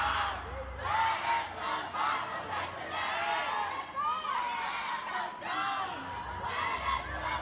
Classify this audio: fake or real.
real